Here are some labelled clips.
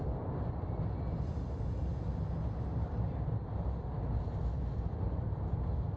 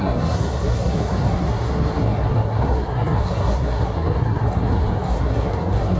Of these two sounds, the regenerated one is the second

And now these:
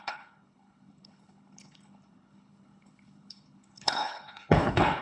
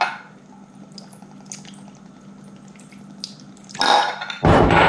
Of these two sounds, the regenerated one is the first